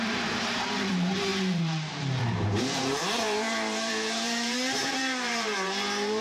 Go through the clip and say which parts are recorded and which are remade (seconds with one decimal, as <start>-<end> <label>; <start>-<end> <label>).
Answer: 0.0-6.2 remade